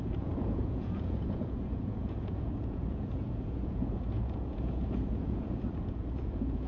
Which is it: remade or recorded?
remade